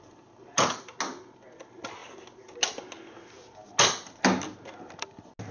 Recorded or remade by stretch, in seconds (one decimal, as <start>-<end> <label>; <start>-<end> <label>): 0.0-5.5 recorded